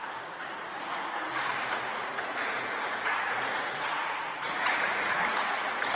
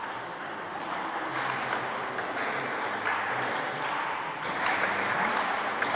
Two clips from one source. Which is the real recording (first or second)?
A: second